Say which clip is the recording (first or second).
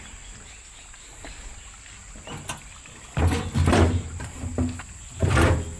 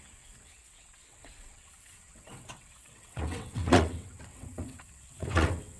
first